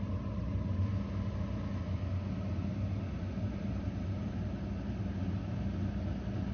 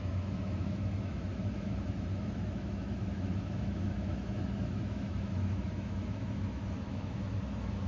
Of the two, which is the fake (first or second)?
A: second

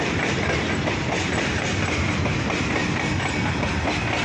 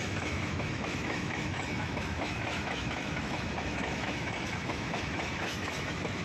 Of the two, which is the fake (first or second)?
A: second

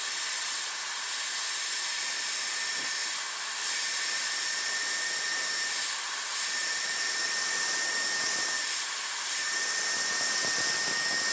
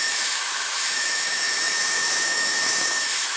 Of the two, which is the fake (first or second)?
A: second